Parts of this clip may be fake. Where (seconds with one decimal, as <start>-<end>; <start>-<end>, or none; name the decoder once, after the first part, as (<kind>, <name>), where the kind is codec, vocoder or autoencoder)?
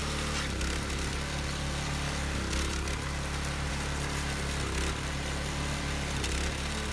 none